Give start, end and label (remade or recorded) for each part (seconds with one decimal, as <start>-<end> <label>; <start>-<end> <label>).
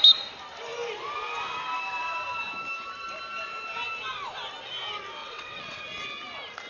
0.0-5.2 recorded; 5.2-5.8 remade; 5.8-6.7 recorded